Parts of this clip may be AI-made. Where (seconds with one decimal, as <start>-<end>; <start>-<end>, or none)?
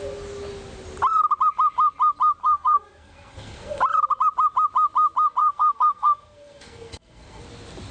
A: 2.4-3.8; 5.4-7.4